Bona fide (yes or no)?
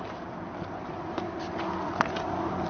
yes